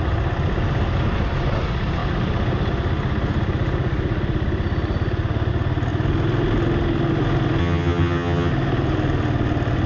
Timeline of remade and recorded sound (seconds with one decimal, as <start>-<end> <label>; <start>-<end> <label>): 0.0-7.6 recorded; 7.6-8.5 remade; 8.5-9.9 recorded